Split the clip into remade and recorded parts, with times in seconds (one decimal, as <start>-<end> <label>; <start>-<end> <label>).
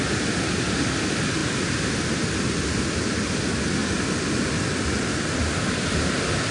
0.0-6.5 recorded